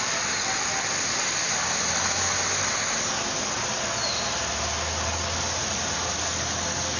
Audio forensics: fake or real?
real